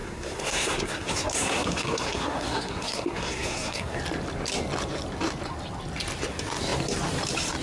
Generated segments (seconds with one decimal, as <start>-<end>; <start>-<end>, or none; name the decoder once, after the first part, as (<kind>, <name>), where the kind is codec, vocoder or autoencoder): 0.0-4.0 (codec, SNAC)